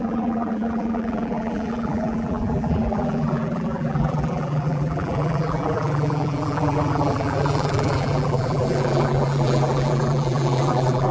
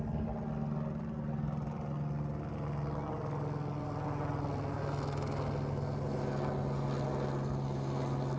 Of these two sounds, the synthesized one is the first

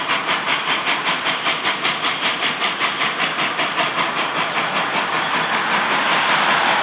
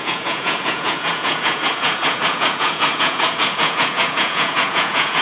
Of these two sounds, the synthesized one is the second